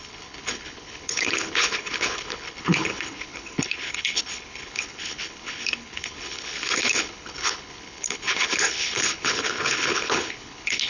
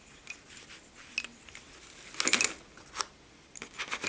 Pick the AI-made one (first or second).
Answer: first